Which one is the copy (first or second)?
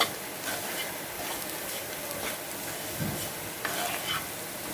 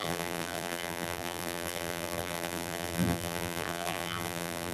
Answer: second